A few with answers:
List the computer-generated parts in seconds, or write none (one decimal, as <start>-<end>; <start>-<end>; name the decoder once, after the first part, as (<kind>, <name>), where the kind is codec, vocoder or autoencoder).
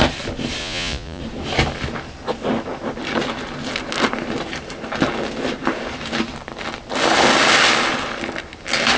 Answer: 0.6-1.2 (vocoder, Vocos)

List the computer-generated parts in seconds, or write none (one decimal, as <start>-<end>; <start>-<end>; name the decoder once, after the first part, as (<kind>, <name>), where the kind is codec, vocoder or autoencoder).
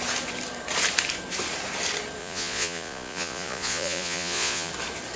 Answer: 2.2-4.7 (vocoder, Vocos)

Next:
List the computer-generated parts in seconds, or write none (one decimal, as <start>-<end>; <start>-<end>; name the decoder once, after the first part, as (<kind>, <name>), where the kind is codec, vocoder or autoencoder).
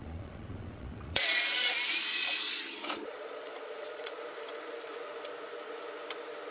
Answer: 0.0-1.4 (vocoder, Vocos); 2.1-4.2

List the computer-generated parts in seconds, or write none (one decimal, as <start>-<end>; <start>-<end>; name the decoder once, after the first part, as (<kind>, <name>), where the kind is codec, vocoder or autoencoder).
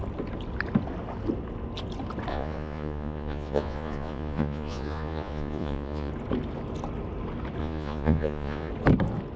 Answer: 2.3-6.1 (vocoder, Vocos); 7.6-8.7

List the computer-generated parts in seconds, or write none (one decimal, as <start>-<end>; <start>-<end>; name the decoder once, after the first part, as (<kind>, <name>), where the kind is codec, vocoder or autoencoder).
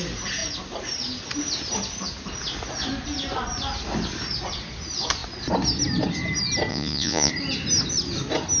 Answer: 6.7-7.3 (vocoder, Vocos)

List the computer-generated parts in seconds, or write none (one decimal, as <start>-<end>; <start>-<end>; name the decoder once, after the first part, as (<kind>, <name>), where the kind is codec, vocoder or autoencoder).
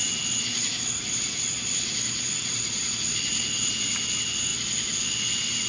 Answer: none